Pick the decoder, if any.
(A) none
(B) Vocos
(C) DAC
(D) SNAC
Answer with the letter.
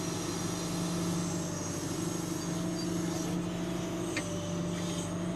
A